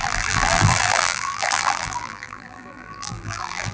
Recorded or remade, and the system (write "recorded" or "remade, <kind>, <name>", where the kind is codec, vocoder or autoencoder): remade, vocoder, BigVGAN v2